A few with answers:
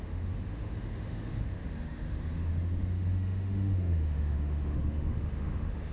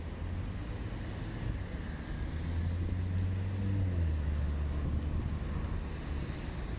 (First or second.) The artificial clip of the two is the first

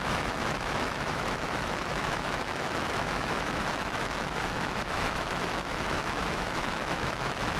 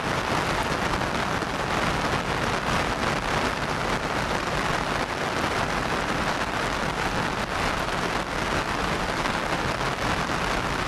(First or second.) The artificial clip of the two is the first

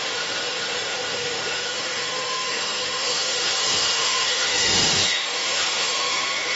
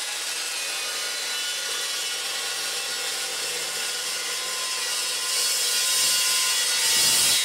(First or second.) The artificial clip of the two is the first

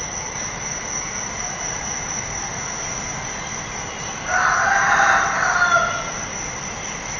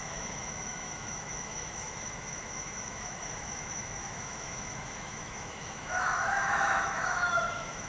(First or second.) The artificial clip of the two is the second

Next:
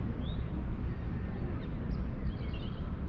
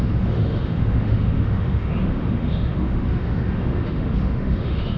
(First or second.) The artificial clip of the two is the second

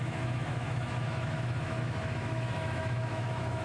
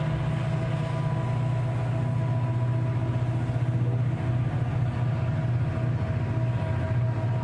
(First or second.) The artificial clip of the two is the first